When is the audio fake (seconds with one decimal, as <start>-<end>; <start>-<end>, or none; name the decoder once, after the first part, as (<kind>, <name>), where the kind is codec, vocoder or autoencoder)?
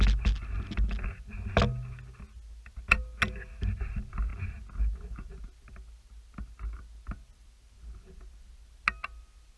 none